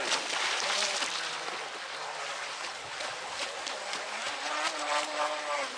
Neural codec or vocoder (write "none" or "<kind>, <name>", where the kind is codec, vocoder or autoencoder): none